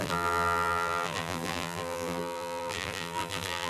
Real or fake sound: fake